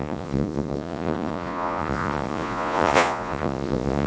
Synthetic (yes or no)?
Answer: yes